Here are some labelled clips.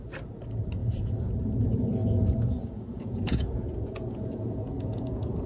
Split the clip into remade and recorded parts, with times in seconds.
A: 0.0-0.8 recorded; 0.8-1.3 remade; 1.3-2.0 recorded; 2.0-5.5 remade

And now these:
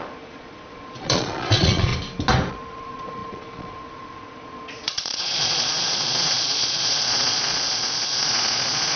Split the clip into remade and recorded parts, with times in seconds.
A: 0.0-1.9 remade; 1.9-2.5 recorded; 2.5-9.0 remade